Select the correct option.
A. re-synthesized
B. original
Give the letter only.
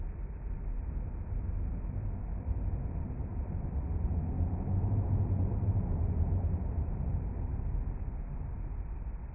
B